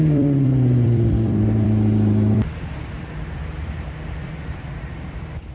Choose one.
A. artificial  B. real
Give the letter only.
A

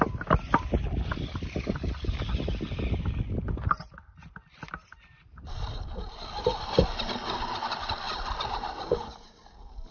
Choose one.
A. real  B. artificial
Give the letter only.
A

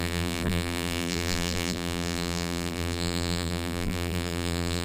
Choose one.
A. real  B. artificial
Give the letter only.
B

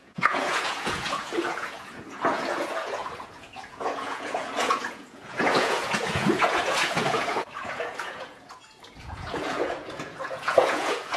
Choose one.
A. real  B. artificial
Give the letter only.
B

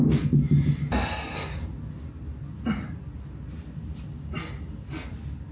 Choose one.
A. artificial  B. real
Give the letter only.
B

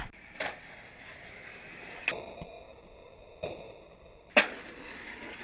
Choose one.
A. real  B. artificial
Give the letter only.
A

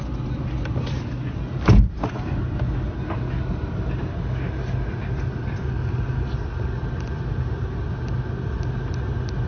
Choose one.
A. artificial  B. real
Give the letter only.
B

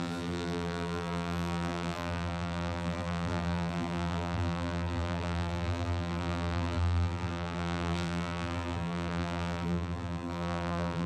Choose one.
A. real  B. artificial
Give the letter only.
B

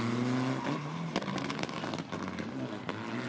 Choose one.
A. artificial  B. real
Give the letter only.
B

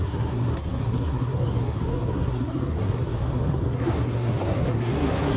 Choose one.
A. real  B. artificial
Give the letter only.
B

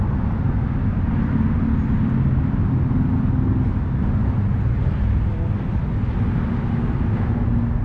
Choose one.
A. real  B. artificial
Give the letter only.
A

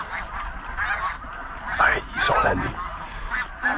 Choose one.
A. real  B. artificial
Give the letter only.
A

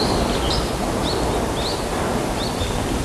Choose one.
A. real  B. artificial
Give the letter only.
A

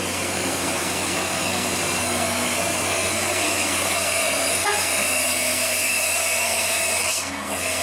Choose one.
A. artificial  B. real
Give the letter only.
A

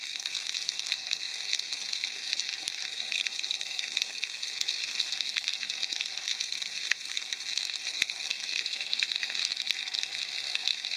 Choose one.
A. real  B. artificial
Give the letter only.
B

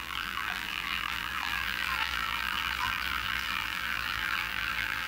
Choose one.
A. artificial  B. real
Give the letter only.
A